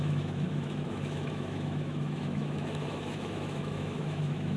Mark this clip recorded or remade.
remade